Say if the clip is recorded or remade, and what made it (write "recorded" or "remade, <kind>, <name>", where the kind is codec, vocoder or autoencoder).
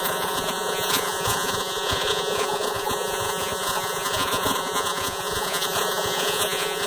remade, vocoder, Vocos